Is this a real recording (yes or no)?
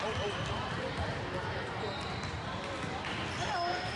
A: yes